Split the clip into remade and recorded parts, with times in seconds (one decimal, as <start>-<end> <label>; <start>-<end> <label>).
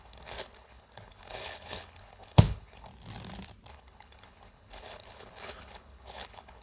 0.0-2.9 remade; 2.9-3.7 recorded; 3.7-6.6 remade